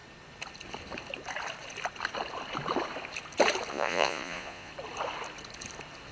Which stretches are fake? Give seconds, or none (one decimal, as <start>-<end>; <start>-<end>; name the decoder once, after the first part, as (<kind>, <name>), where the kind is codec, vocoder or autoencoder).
3.7-4.7 (vocoder, Vocos)